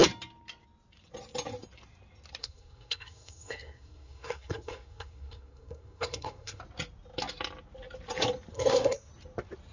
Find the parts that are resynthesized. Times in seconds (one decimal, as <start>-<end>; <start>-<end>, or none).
2.4-6.6; 8.5-9.1